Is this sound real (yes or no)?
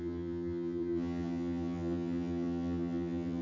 no